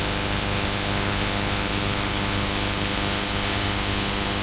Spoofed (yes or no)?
yes